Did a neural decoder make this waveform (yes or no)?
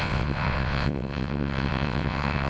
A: yes